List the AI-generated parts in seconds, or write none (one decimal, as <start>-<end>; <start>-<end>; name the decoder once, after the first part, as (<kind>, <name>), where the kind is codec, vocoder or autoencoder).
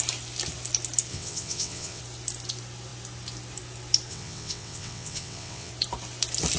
1.1-2.0 (vocoder, WaveNeXt); 4.1-5.7